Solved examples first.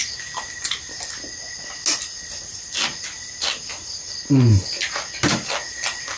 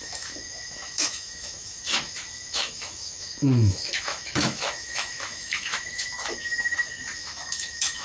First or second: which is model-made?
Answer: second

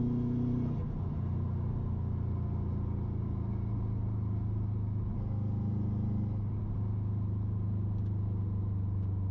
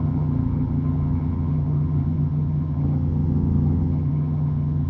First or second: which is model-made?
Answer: second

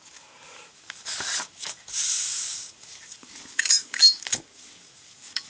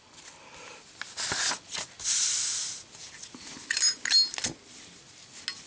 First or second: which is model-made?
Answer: first